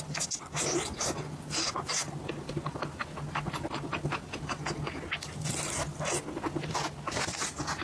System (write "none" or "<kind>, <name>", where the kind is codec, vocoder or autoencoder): none